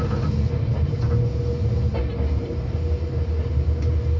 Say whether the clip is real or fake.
real